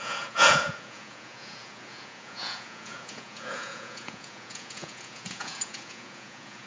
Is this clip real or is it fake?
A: fake